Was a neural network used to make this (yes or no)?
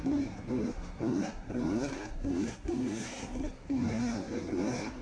yes